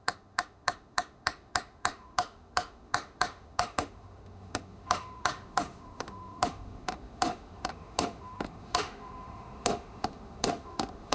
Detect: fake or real fake